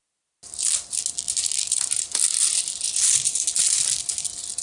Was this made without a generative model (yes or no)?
yes